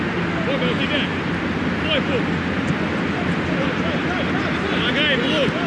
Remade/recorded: recorded